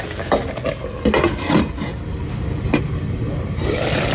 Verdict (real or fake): real